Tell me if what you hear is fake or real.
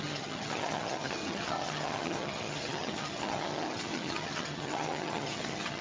fake